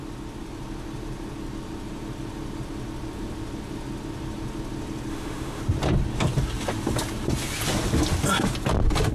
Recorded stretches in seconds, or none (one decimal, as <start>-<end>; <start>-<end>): 0.0-5.1; 5.6-9.1